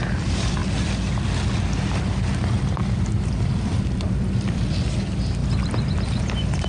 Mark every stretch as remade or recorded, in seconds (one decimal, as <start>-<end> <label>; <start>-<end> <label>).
0.0-0.6 remade; 0.6-2.0 recorded; 2.0-6.7 remade